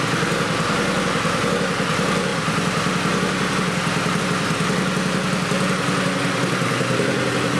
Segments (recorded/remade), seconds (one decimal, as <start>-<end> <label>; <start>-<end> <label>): 0.0-7.6 recorded